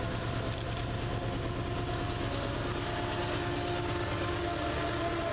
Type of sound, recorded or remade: recorded